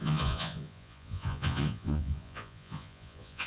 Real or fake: fake